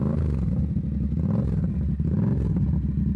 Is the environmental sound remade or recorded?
recorded